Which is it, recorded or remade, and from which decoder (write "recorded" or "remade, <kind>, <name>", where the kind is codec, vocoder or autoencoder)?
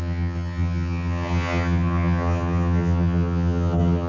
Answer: remade, vocoder, HiFi-GAN